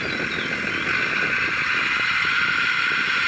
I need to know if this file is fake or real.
real